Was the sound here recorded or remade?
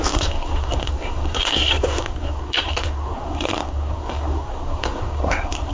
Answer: remade